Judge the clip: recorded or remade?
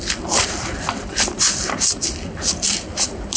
recorded